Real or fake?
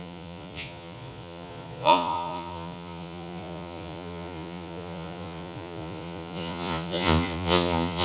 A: fake